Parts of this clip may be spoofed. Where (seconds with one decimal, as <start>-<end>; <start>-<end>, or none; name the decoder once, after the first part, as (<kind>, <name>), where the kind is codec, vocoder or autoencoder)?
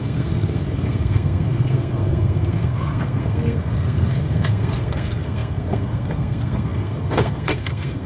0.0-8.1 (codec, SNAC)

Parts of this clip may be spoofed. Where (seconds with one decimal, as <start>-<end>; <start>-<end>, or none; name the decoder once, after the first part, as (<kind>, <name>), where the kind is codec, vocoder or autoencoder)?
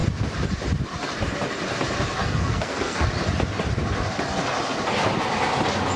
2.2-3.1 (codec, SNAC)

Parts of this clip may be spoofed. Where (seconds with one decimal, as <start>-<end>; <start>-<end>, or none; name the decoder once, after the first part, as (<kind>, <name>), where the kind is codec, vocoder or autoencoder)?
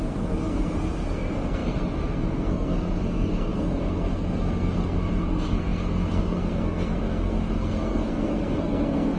0.0-9.2 (codec, SNAC)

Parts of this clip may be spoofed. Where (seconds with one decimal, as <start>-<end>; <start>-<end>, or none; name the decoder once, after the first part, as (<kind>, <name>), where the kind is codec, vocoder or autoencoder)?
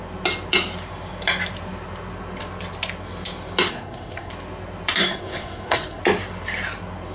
3.7-4.3 (codec, SNAC); 5.0-6.0